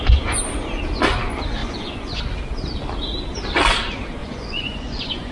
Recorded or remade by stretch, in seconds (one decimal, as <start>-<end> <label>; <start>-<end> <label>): 0.0-1.6 recorded; 1.6-2.2 remade; 2.2-4.2 recorded; 4.2-5.3 remade